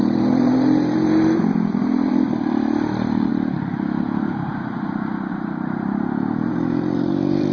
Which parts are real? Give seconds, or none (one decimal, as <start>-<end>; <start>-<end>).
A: 3.3-5.3